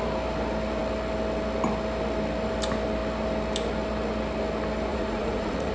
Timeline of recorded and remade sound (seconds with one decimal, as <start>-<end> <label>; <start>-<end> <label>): 0.0-4.9 recorded; 4.9-5.7 remade